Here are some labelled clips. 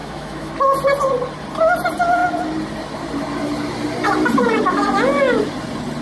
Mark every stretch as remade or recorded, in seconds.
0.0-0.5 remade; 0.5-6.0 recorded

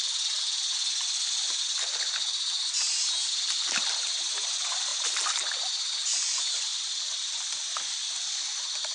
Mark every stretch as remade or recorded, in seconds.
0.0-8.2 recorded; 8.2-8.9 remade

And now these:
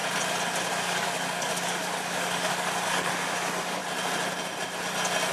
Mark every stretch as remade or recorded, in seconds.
0.0-0.7 recorded; 0.7-3.8 remade; 3.8-5.3 recorded

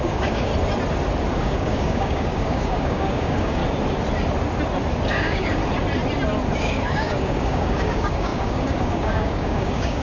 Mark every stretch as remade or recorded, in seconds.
0.0-0.5 remade; 0.5-1.3 recorded; 1.3-3.6 remade; 3.6-5.1 recorded; 5.1-5.6 remade; 5.6-6.6 recorded; 6.6-10.0 remade

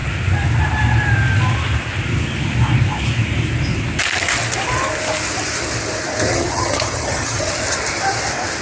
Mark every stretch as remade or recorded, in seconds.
0.0-6.3 recorded; 6.3-7.5 remade; 7.5-8.6 recorded